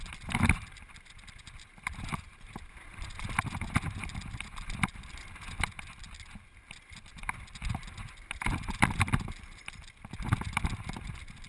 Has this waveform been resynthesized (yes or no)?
yes